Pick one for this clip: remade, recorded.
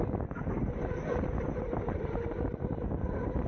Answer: recorded